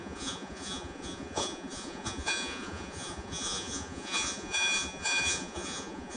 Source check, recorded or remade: remade